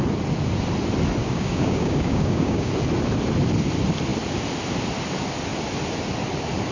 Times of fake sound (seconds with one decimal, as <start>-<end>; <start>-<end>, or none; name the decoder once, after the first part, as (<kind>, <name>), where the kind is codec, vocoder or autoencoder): 1.2-2.7 (codec, DAC)